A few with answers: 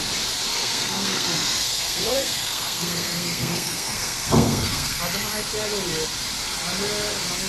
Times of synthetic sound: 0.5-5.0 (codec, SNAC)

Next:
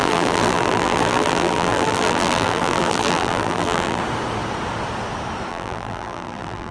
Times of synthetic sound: 0.0-4.0 (vocoder, BigVGAN v2); 5.5-6.7

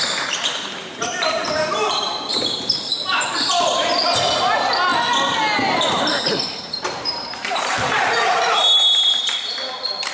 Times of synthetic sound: 0.0-4.9 (vocoder, BigVGAN v2); 6.7-8.6